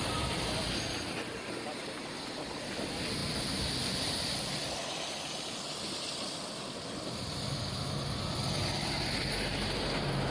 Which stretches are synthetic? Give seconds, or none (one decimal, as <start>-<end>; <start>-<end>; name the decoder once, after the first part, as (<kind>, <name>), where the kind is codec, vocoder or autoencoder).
none